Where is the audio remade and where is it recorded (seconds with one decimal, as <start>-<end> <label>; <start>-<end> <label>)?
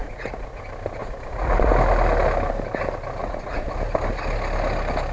0.0-0.6 remade; 0.6-1.0 recorded; 1.0-1.7 remade; 1.7-3.2 recorded; 3.2-3.7 remade; 3.7-5.1 recorded